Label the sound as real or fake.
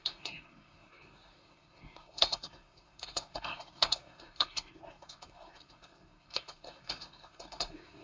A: fake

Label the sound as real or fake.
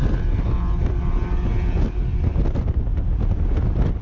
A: real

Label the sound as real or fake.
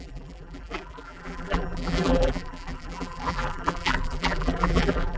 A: fake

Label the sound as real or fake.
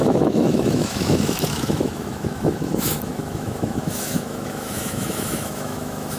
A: fake